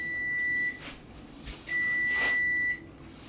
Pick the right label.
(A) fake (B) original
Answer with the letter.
B